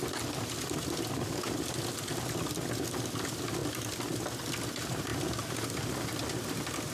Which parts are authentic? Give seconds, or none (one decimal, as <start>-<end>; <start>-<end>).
0.0-6.9